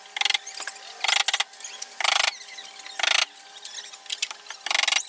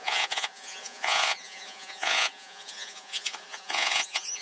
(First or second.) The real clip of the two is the first